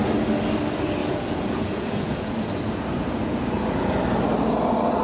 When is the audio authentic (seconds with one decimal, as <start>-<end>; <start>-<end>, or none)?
0.0-1.0; 4.0-5.0